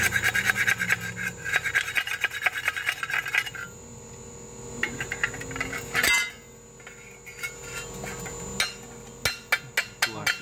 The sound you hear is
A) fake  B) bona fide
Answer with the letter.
B